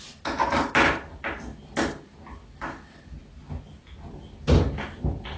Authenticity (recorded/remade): recorded